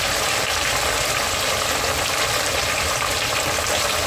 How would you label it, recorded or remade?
recorded